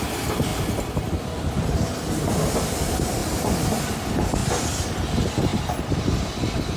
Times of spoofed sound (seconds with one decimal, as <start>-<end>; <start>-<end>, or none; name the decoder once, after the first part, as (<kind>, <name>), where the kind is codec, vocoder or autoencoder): none